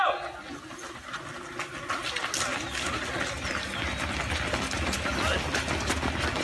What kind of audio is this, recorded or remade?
recorded